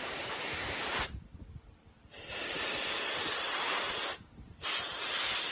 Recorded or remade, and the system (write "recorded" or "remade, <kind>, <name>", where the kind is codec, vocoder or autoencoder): remade, vocoder, BigVGAN v2